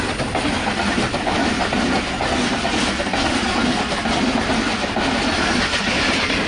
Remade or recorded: recorded